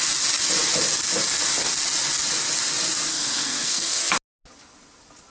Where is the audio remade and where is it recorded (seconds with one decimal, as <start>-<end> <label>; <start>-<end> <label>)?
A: 0.0-3.1 recorded; 3.1-4.0 remade; 4.0-5.3 recorded